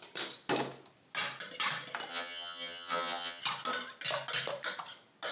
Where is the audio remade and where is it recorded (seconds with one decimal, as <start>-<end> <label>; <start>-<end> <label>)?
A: 0.0-2.1 recorded; 2.1-3.4 remade; 3.4-5.3 recorded